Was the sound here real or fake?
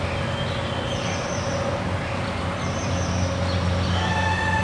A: real